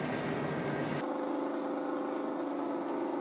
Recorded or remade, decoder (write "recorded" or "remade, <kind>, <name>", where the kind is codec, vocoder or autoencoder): recorded